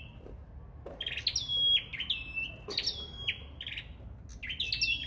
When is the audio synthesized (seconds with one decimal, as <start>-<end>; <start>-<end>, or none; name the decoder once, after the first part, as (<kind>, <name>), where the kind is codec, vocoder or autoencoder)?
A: none